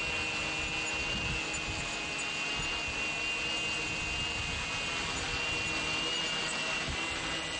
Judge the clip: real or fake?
real